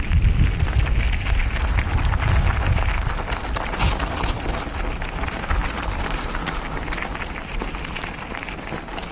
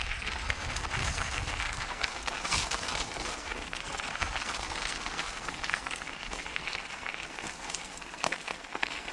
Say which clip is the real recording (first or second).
first